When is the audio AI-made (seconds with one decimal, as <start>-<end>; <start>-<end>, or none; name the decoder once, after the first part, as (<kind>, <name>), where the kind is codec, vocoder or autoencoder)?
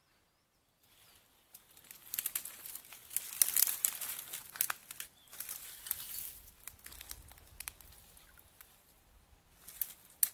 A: none